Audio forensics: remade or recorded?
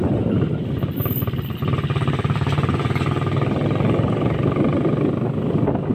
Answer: recorded